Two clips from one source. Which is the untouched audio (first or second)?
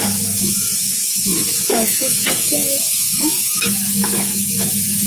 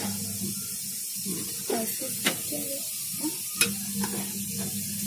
second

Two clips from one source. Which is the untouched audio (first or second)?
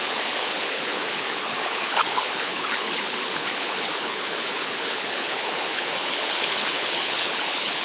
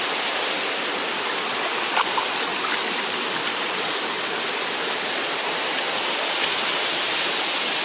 second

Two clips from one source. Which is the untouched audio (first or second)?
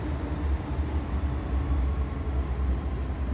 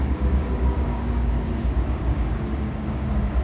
first